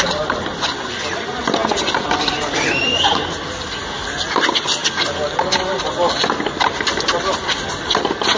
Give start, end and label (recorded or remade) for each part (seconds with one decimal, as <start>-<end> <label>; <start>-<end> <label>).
0.0-8.4 recorded